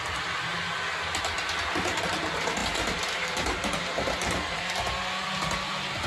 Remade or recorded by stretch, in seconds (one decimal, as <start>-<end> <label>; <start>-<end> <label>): 0.0-2.6 recorded; 2.6-4.7 remade; 4.7-6.1 recorded